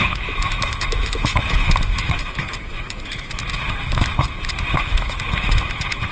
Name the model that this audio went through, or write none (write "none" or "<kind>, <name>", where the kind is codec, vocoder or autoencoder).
autoencoder, DAC-VAE